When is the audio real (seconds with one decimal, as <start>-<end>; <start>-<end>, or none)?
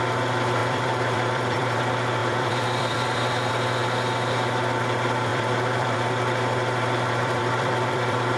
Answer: 0.0-0.6; 1.8-2.2; 3.5-5.3